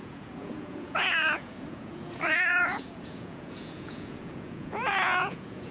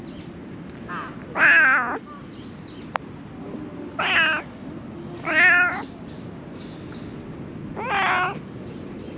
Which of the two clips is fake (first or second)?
first